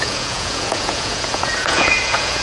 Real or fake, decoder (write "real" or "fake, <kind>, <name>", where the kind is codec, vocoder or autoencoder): fake, vocoder, Vocos